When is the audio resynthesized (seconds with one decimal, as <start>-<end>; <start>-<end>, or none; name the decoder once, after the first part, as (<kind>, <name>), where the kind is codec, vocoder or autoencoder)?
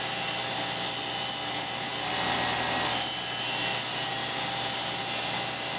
none